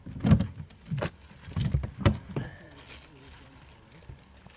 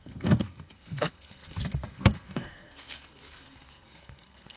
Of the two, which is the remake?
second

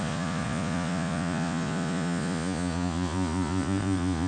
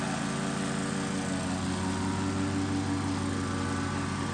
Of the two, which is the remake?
first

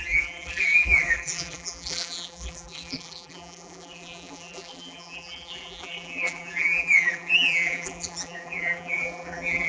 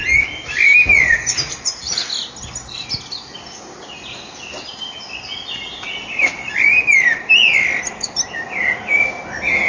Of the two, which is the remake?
first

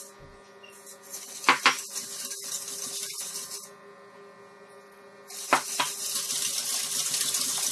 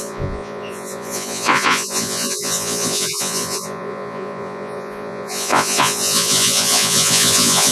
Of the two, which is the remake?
second